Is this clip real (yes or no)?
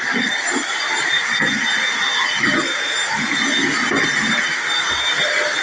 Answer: yes